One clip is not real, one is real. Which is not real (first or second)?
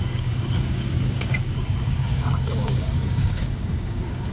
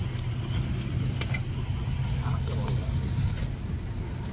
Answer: first